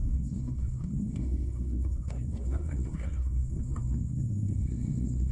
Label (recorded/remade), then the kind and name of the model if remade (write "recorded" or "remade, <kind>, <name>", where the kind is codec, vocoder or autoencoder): remade, codec, SNAC